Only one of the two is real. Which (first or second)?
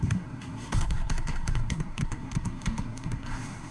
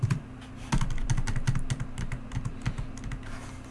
second